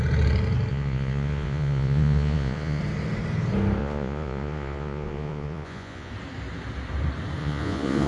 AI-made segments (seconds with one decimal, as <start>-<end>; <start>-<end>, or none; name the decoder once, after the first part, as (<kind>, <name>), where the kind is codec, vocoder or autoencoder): 0.7-2.8 (vocoder, Vocos); 3.8-6.1; 7.4-8.1